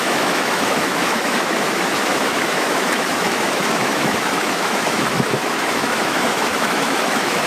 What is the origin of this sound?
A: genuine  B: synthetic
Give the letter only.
B